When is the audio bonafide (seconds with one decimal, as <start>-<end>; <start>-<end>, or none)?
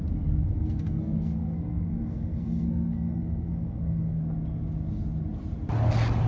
0.0-0.4; 4.2-6.3